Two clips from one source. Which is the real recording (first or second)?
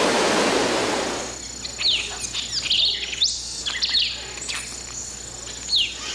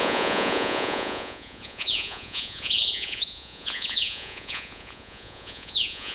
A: first